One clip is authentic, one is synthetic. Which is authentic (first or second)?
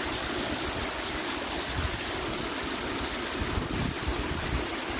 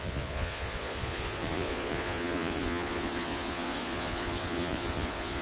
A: first